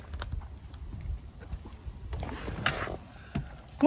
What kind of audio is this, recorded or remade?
recorded